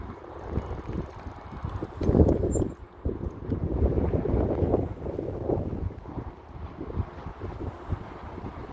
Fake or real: real